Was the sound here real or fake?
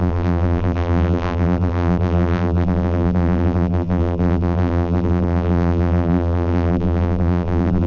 fake